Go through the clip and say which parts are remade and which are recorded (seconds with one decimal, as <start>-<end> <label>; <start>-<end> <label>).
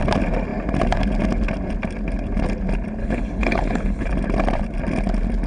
0.0-3.0 recorded; 3.0-4.1 remade; 4.1-5.5 recorded